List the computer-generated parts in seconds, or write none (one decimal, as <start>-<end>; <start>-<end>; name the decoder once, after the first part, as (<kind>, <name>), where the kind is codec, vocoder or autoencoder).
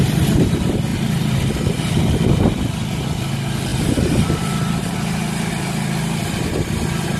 3.7-5.5 (vocoder, BigVGAN v2)